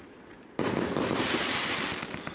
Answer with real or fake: real